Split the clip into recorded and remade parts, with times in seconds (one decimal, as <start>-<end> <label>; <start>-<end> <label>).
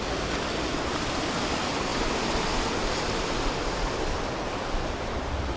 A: 0.0-5.6 recorded